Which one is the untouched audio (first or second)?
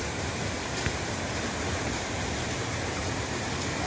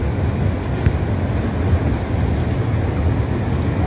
second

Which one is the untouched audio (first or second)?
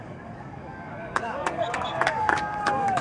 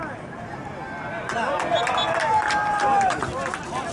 second